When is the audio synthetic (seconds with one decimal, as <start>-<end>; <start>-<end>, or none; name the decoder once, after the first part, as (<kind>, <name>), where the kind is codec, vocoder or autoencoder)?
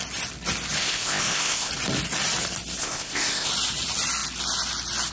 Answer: 0.8-1.7 (codec, ZipCodec); 2.8-3.5